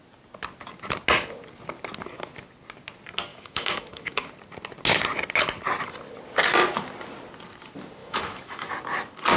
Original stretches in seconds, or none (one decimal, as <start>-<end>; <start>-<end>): 0.0-3.3; 4.3-8.0; 8.7-9.4

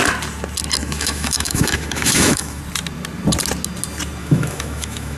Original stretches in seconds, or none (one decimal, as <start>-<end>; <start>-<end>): 0.0-0.8; 2.6-4.2

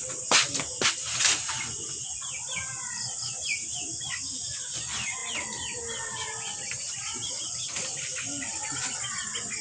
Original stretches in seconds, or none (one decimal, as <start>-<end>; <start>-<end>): 0.0-9.6

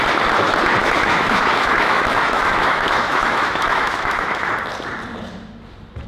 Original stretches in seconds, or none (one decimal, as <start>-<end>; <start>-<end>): 0.0-0.8; 4.5-6.1